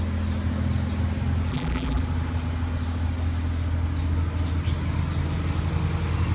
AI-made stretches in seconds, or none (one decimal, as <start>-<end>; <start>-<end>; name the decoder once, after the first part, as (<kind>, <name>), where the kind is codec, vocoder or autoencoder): 1.5-2.0 (vocoder, BigVGAN v2)